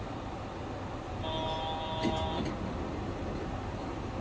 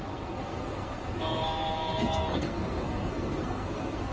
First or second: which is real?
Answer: first